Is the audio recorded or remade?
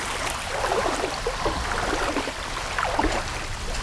remade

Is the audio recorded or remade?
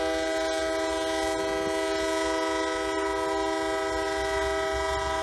recorded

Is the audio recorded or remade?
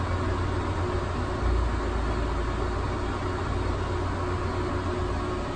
recorded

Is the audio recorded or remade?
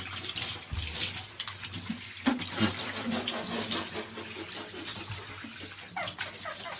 recorded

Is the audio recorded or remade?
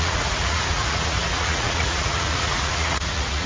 remade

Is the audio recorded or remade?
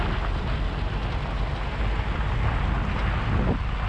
recorded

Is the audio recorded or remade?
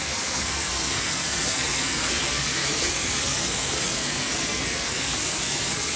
remade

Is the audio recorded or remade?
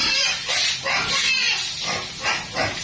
recorded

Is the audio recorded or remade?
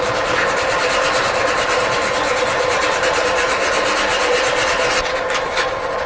recorded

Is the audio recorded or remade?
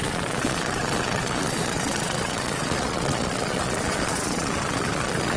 remade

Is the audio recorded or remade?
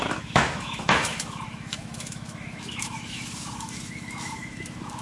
remade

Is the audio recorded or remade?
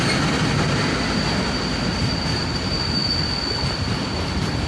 recorded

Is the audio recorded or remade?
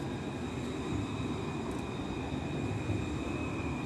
recorded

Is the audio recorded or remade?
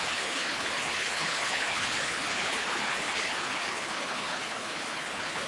remade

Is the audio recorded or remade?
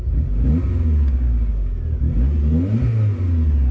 recorded